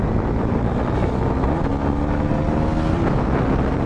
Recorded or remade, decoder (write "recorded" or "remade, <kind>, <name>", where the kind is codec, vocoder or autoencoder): recorded